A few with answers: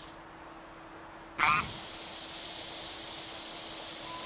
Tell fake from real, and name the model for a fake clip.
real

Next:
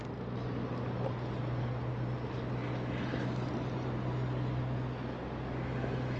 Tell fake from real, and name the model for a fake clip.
real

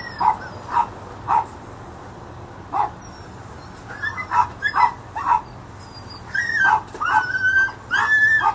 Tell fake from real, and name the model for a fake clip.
real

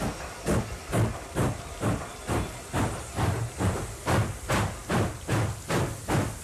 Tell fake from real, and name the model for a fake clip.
real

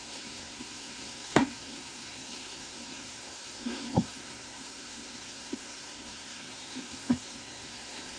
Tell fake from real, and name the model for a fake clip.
fake, codec, SNAC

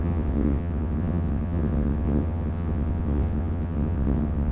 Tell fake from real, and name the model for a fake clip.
fake, vocoder, WaveNeXt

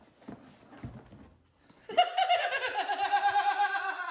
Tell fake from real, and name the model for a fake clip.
real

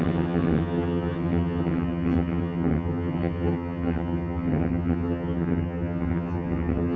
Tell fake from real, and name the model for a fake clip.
fake, vocoder, HiFi-GAN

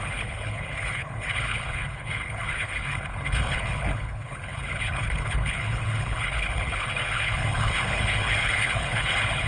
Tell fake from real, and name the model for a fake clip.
fake, codec, HILCodec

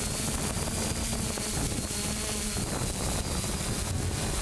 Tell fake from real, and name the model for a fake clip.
real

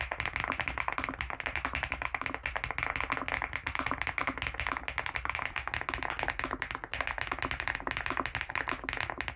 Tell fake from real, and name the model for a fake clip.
real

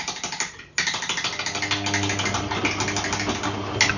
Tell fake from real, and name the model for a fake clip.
real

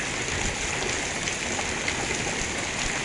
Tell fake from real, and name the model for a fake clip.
real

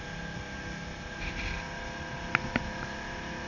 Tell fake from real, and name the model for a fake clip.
real